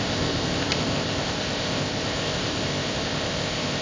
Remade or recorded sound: remade